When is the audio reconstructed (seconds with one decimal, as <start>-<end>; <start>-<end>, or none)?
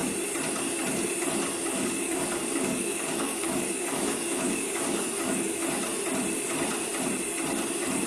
1.7-5.6